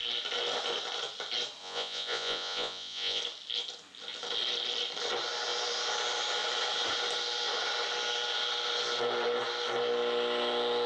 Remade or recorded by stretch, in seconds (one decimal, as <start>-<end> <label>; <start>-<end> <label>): 0.0-1.6 recorded; 1.6-3.2 remade; 3.2-10.9 recorded